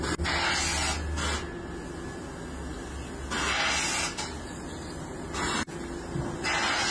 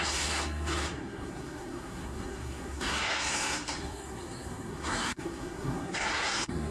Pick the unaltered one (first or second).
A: first